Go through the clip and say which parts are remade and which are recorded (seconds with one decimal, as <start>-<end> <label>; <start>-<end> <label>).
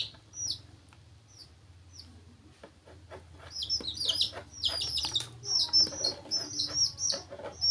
0.0-7.7 remade